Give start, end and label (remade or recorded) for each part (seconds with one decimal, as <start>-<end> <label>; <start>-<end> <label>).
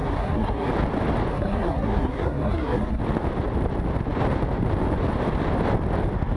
0.0-0.7 remade; 0.7-1.3 recorded; 1.3-3.0 remade; 3.0-6.4 recorded